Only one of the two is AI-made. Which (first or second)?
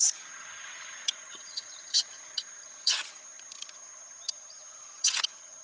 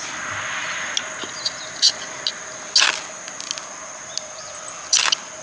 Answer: first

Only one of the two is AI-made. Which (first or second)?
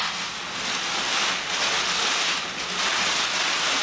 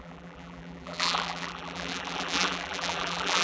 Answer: second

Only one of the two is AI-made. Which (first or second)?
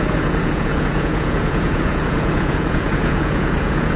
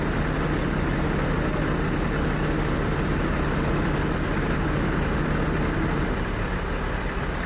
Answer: first